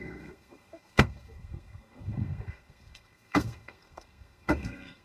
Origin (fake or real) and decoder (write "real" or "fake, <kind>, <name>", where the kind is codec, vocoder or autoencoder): fake, codec, SNAC